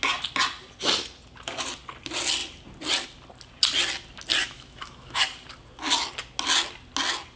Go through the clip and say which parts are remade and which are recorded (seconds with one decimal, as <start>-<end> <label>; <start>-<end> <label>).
0.0-4.4 recorded; 4.4-5.2 remade; 5.2-7.4 recorded